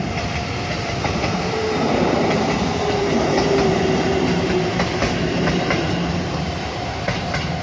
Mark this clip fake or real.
fake